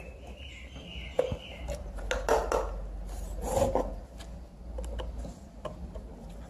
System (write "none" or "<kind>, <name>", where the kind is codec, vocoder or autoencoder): none